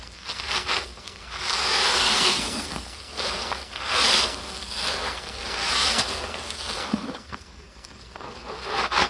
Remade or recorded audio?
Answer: remade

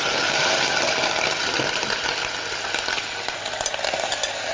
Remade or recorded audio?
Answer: recorded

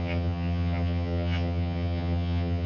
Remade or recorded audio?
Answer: remade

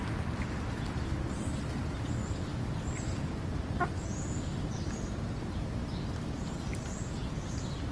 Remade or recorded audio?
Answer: recorded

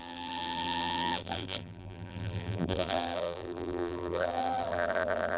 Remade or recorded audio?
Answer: remade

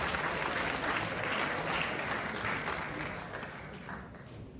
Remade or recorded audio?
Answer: recorded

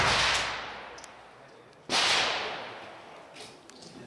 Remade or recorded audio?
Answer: recorded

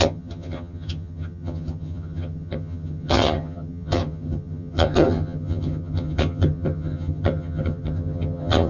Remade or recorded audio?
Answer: remade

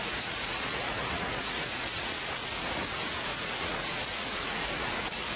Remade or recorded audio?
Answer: remade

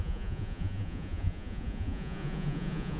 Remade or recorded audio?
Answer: remade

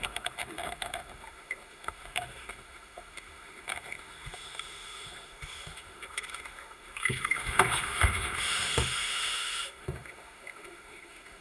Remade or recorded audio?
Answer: remade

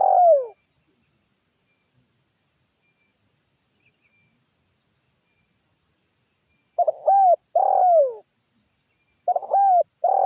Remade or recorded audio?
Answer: recorded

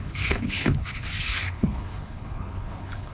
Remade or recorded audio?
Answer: remade